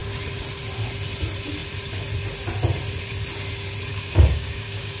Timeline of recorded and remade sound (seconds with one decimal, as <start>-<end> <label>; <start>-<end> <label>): 0.0-3.9 recorded; 3.9-5.0 remade